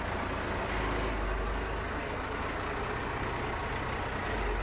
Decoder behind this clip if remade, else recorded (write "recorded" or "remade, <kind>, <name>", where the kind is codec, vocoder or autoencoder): recorded